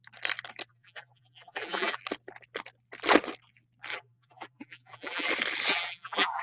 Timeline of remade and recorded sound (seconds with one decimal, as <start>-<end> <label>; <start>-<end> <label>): 0.0-0.7 recorded; 0.7-2.0 remade; 2.0-3.9 recorded; 3.9-5.3 remade; 5.3-5.7 recorded; 5.7-6.4 remade